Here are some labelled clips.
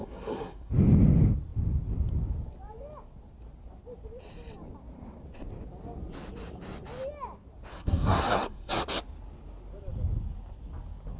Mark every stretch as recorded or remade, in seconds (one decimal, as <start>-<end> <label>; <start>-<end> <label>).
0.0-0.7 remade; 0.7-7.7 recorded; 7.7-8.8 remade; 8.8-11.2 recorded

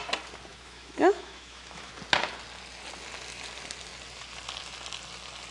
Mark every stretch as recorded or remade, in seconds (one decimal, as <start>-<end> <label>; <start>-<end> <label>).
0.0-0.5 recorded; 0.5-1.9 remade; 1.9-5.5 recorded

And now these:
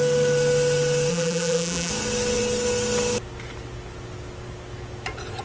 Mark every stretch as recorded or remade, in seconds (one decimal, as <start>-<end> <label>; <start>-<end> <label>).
0.0-1.1 recorded; 1.1-1.9 remade; 1.9-5.4 recorded

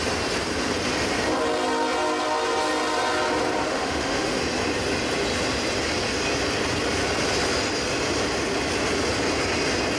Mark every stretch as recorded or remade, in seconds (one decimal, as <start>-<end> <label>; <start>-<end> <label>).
0.0-3.7 recorded; 3.7-4.4 remade; 4.4-10.0 recorded

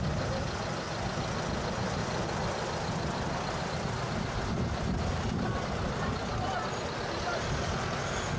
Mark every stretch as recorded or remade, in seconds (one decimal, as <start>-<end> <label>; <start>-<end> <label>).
0.0-2.0 recorded; 2.0-5.9 remade; 5.9-8.4 recorded

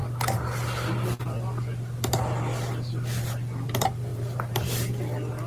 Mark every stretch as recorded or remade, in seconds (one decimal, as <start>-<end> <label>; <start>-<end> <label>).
0.0-4.1 recorded; 4.1-4.9 remade; 4.9-5.5 recorded

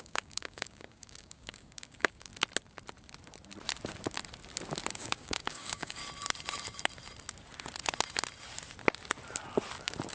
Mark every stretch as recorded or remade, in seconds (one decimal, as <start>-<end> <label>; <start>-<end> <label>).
0.0-2.3 remade; 2.3-4.9 recorded; 4.9-6.0 remade; 6.0-10.1 recorded